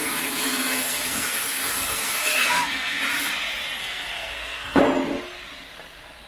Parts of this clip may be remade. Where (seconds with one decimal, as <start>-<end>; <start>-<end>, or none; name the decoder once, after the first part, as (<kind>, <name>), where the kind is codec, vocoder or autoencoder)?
0.0-3.0 (codec, SNAC); 3.8-4.8